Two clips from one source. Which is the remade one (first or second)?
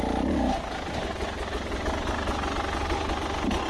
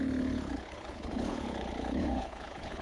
second